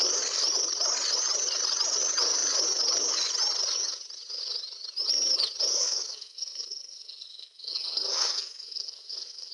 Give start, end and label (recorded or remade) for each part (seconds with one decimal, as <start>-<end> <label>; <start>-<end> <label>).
0.0-5.7 recorded; 5.7-9.5 remade